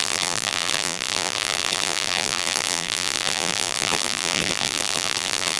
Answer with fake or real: fake